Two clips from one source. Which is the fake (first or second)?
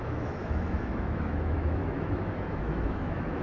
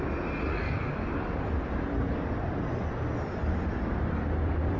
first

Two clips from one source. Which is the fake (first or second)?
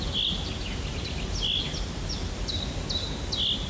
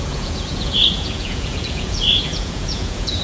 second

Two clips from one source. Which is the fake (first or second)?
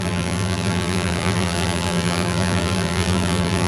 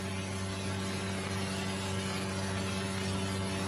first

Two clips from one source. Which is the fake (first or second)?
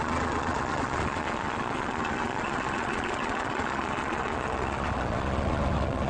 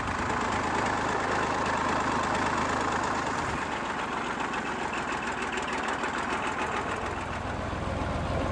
first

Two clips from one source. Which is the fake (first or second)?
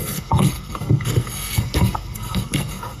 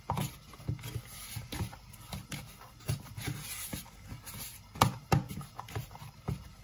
first